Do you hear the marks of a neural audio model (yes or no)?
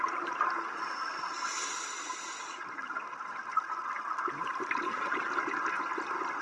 no